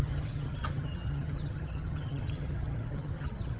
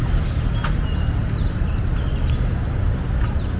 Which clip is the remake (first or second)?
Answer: first